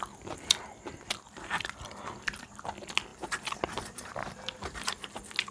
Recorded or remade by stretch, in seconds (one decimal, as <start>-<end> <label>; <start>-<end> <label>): 0.0-5.5 recorded